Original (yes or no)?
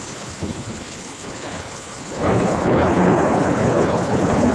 no